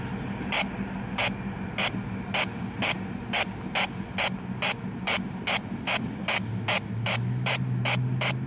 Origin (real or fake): real